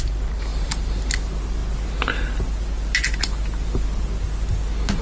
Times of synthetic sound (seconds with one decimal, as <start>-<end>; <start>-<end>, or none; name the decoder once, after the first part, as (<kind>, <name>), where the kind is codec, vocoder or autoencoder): none